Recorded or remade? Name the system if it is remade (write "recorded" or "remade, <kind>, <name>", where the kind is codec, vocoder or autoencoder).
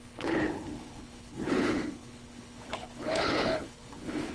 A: remade, codec, HILCodec